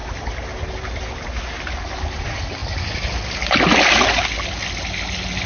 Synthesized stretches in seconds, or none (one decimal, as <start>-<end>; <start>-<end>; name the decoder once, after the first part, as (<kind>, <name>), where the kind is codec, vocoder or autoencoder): none